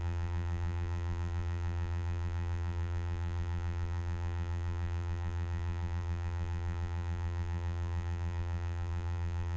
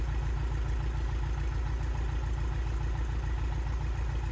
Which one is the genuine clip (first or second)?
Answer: second